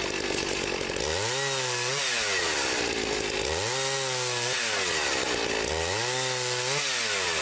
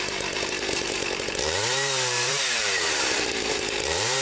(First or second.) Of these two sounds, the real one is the first